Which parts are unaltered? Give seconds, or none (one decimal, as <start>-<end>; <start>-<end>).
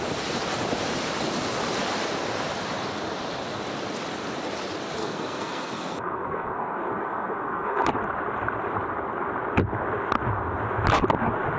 0.0-5.0; 7.9-11.6